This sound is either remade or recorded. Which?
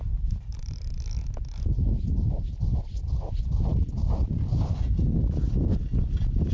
recorded